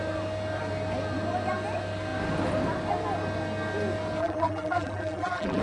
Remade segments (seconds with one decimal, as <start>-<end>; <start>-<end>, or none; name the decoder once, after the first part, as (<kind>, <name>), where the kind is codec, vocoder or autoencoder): 4.2-5.6 (vocoder, BigVGAN v2)